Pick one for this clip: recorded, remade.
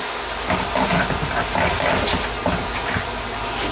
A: recorded